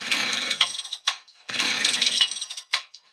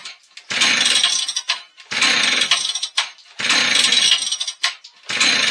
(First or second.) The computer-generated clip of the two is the first